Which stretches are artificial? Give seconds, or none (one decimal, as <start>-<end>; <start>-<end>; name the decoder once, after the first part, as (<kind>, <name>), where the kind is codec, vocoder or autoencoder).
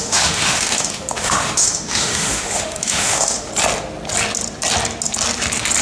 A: 0.0-3.5 (autoencoder, DAC-VAE)